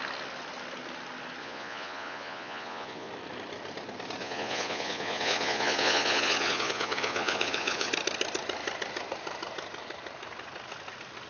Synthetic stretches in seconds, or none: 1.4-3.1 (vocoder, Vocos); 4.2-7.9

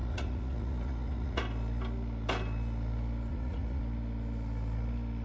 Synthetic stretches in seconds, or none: 0.0-1.4 (vocoder, Vocos); 3.3-3.8

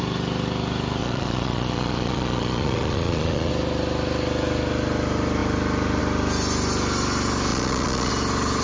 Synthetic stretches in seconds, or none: 1.0-3.5 (vocoder, Vocos); 7.5-8.1

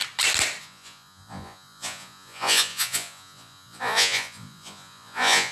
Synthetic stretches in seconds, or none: 0.6-5.5 (vocoder, Vocos)

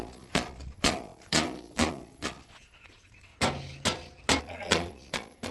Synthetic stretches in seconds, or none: 0.0-3.3 (vocoder, Vocos); 4.4-5.5

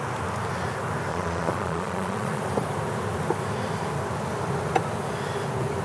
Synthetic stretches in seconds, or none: 1.1-2.4 (vocoder, Vocos)

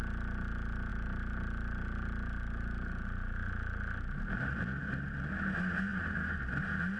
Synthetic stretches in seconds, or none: none

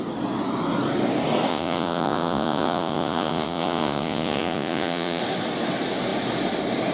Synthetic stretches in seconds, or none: 1.5-5.2 (vocoder, Vocos)